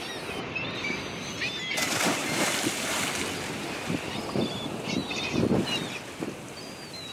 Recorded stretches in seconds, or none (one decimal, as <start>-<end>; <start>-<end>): 0.0-7.1